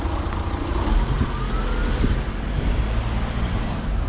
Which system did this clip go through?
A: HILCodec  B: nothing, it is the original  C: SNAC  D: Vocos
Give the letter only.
B